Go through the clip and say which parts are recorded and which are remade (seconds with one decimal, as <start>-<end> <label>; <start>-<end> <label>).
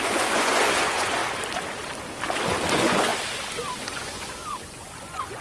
0.0-1.2 remade; 1.2-2.7 recorded; 2.7-3.1 remade; 3.1-3.8 recorded; 3.8-5.4 remade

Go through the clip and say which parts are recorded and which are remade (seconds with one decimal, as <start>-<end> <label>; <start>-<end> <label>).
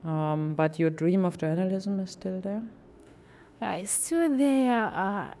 0.0-0.5 recorded; 0.5-1.4 remade; 1.4-2.9 recorded; 2.9-5.4 remade